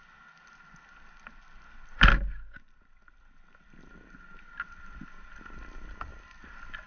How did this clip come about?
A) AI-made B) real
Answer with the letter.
B